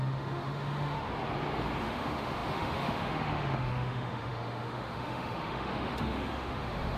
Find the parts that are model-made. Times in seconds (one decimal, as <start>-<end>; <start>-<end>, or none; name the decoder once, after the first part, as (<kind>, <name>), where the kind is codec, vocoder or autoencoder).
0.0-1.0 (autoencoder, DAC-VAE); 1.8-7.0